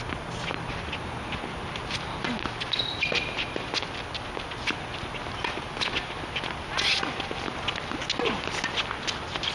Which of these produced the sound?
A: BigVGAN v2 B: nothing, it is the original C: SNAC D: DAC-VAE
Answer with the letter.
B